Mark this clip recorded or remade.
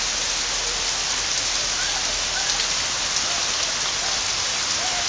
recorded